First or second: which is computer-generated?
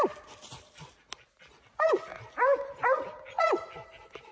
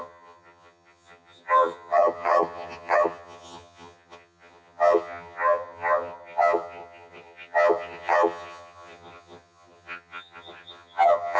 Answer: second